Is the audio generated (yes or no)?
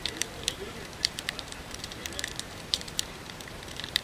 yes